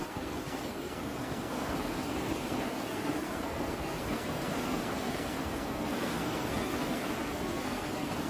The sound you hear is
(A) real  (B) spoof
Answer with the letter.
B